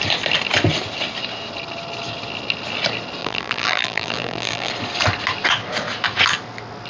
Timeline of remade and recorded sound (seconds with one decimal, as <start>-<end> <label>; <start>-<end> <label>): 0.0-3.2 recorded; 3.2-4.7 remade; 4.7-6.9 recorded